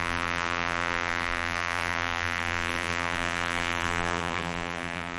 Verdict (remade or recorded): remade